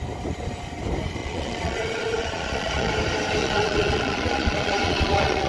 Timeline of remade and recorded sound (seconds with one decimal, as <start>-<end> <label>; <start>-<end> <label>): 0.0-1.2 recorded; 1.2-2.9 remade; 2.9-3.4 recorded; 3.4-5.5 remade